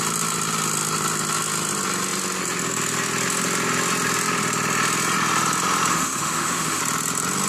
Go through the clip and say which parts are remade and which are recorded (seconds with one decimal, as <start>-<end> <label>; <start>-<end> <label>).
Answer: 0.0-5.9 recorded; 5.9-6.8 remade; 6.8-7.5 recorded